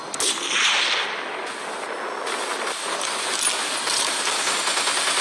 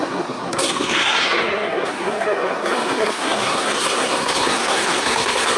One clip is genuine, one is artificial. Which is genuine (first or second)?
first